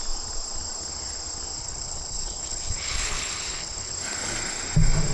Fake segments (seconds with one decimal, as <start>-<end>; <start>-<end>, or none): 1.6-3.9